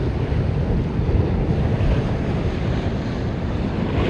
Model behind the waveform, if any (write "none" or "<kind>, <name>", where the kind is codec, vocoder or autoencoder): none